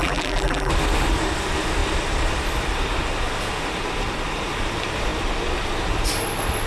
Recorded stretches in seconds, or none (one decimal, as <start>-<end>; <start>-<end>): 0.7-6.7